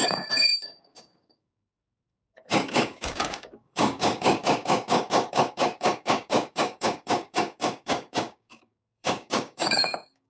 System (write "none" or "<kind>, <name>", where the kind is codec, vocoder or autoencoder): codec, DAC